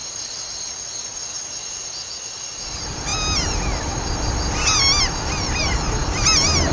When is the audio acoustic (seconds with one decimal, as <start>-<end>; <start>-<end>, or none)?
0.0-6.7